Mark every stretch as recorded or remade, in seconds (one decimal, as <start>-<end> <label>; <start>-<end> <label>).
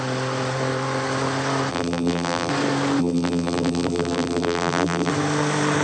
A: 0.0-1.7 recorded; 1.7-2.5 remade; 2.5-3.0 recorded; 3.0-5.1 remade; 5.1-5.8 recorded